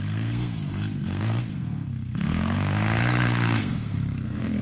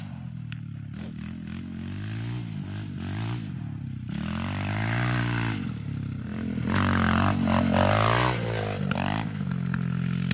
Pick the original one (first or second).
second